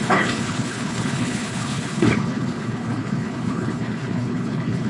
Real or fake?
fake